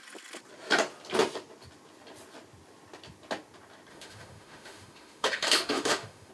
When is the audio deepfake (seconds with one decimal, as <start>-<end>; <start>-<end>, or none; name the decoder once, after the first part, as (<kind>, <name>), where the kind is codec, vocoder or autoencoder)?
3.9-6.3 (autoencoder, DAC-VAE)